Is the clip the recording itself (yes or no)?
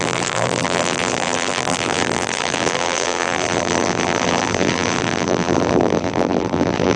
no